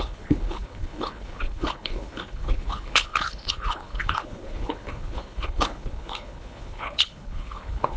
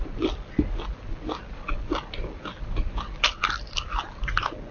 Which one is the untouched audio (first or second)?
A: second